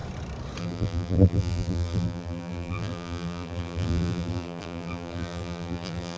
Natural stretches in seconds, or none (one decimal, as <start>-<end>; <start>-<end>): 0.0-0.6